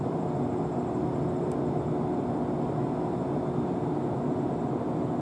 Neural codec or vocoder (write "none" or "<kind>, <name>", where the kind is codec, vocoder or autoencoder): none